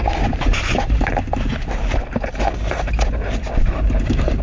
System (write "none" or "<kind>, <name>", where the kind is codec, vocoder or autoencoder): none